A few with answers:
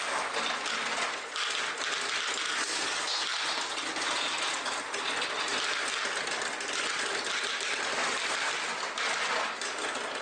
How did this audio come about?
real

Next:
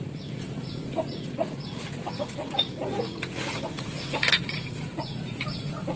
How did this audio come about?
fake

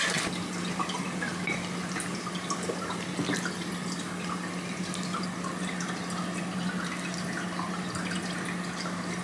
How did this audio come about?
real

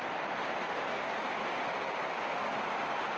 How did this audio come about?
real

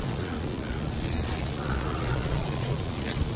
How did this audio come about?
fake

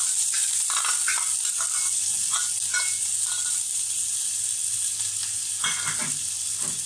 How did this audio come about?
real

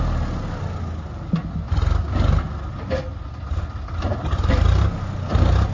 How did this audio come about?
real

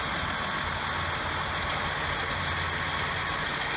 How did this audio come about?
real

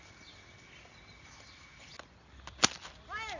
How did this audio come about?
real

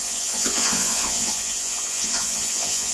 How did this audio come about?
fake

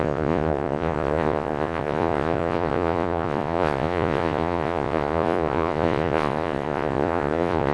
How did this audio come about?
fake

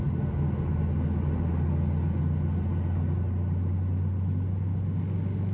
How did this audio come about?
real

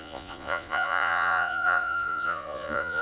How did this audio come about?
fake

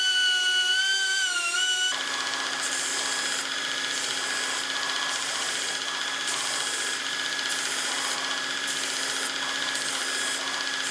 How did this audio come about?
real